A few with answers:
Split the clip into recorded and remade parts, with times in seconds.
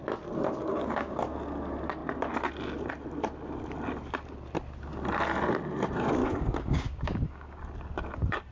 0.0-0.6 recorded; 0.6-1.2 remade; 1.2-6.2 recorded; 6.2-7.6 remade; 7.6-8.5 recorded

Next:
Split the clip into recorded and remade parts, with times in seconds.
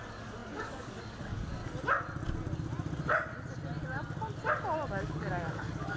0.0-1.6 remade; 1.6-4.9 recorded; 4.9-6.0 remade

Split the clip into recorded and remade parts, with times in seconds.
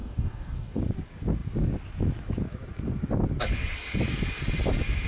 0.0-0.8 remade; 0.8-5.1 recorded